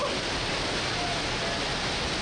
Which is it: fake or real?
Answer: real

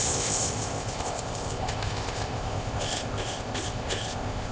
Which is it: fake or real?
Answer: fake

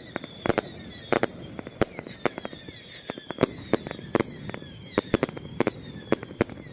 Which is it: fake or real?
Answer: real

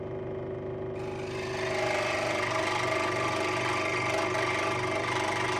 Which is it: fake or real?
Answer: real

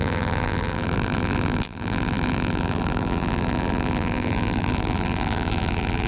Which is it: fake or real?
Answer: fake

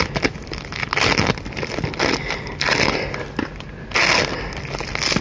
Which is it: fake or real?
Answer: real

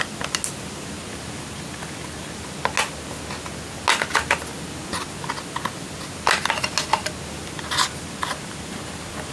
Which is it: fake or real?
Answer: real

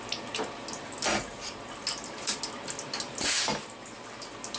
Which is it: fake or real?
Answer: real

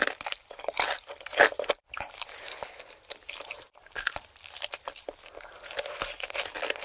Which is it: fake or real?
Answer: fake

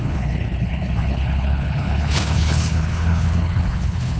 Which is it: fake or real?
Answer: fake